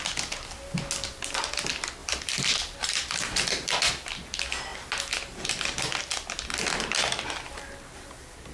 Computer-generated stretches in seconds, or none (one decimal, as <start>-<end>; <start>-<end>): 2.0-3.9